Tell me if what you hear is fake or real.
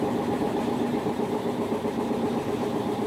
fake